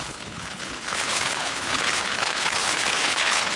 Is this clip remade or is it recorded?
remade